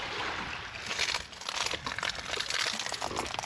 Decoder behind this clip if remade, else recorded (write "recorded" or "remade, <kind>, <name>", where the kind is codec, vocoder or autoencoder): recorded